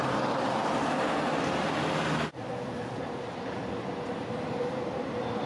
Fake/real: real